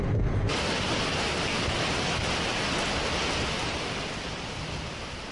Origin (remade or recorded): recorded